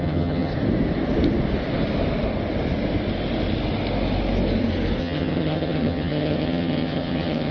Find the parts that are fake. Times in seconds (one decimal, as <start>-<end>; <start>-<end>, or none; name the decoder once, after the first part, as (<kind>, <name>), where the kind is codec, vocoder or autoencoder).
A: 0.0-0.5 (vocoder, HiFi-GAN); 5.0-7.5